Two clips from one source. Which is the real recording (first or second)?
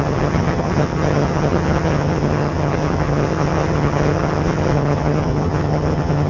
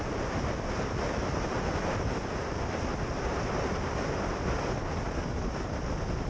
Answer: second